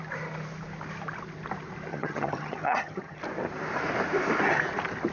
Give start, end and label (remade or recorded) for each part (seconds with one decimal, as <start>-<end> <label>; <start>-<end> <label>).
0.0-1.9 recorded; 1.9-3.2 remade; 3.2-5.1 recorded